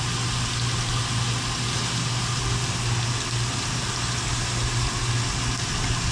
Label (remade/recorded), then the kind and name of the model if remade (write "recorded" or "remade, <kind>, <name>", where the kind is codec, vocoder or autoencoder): recorded